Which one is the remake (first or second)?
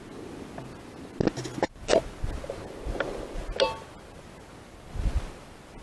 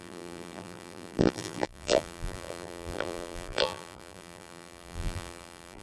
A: second